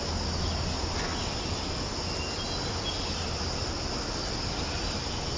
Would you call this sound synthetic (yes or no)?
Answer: no